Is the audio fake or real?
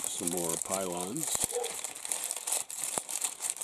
fake